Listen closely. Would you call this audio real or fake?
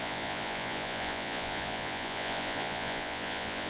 fake